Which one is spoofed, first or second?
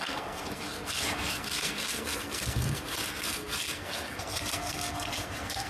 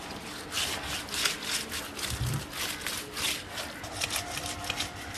first